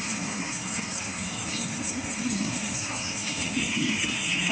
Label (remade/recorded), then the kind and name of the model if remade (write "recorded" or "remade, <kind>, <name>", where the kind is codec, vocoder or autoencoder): remade, codec, SNAC